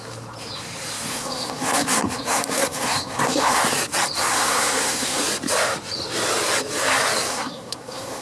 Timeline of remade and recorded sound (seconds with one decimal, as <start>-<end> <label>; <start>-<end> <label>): 0.0-1.1 recorded; 1.1-3.6 remade; 3.6-4.3 recorded; 4.3-5.2 remade; 5.2-7.3 recorded; 7.3-8.2 remade